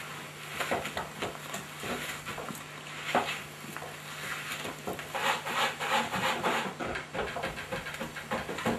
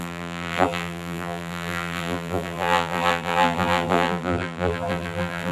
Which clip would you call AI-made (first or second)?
second